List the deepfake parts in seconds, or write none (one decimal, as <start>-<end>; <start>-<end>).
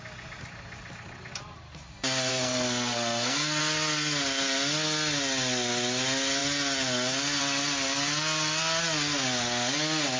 2.3-3.6